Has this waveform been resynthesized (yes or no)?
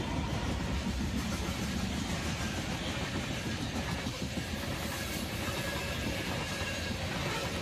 no